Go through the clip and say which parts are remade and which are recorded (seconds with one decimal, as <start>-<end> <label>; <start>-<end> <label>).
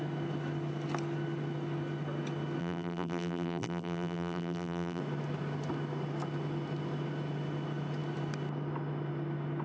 0.0-2.6 recorded; 2.6-5.0 remade; 5.0-9.6 recorded